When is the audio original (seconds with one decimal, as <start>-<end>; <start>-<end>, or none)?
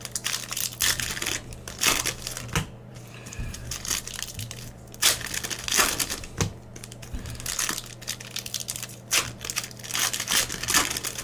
0.0-2.9; 3.7-11.2